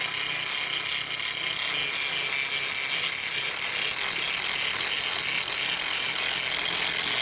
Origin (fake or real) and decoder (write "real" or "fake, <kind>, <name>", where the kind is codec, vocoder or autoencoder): real